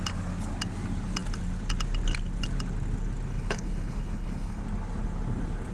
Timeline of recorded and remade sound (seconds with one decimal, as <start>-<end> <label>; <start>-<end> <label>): 0.0-3.3 recorded; 3.3-4.6 remade; 4.6-5.7 recorded